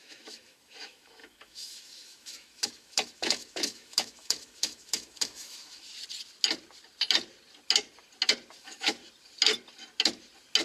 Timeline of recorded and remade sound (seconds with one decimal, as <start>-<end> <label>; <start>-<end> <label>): 0.0-5.9 remade; 5.9-8.6 recorded; 8.6-9.0 remade; 9.0-10.6 recorded